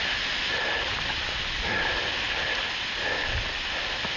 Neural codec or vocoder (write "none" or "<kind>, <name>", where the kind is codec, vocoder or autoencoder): none